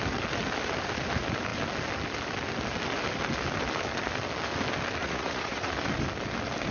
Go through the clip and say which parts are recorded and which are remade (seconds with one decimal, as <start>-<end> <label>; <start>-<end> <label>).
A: 0.0-5.0 recorded; 5.0-5.7 remade; 5.7-6.7 recorded